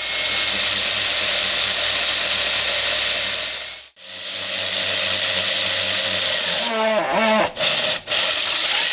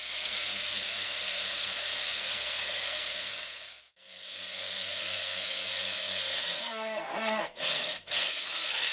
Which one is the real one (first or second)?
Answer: first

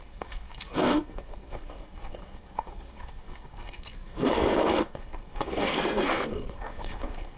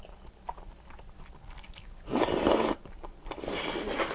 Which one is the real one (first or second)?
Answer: second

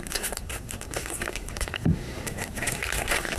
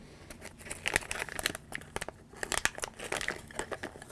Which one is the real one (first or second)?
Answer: second